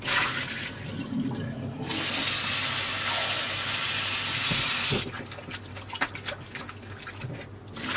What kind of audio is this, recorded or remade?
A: recorded